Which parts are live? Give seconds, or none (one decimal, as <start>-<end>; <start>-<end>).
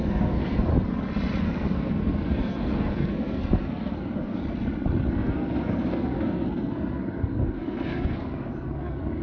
0.7-1.4; 4.4-5.1